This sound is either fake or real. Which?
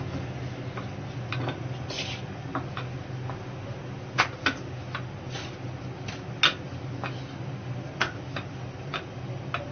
real